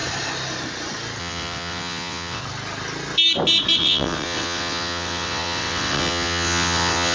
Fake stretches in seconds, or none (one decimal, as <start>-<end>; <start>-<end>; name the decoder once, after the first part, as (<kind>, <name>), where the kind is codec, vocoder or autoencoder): 1.2-2.4 (vocoder, WaveNeXt); 3.8-7.1